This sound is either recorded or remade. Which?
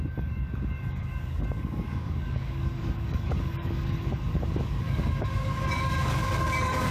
remade